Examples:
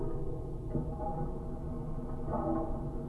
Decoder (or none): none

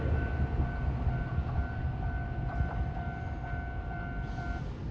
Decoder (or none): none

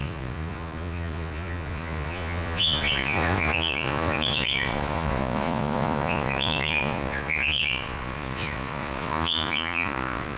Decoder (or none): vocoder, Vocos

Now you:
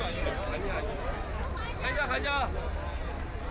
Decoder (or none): none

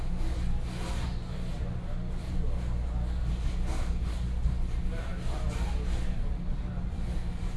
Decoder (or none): none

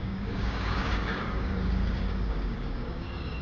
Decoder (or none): codec, DAC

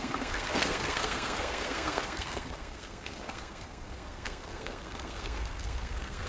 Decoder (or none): codec, SNAC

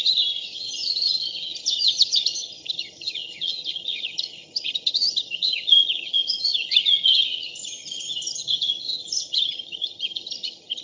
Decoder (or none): vocoder, HiFi-GAN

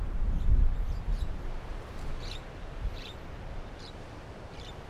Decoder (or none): vocoder, BigVGAN v2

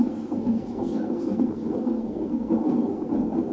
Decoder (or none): codec, SNAC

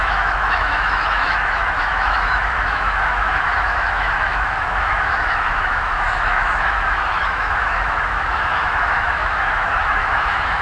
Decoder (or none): autoencoder, DAC-VAE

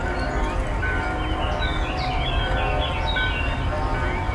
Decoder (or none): none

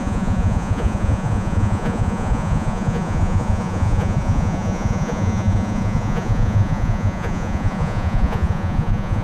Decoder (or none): vocoder, Vocos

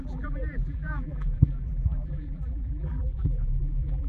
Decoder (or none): vocoder, BigVGAN v2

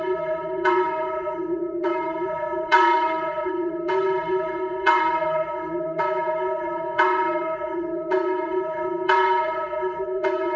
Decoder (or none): vocoder, WaveNeXt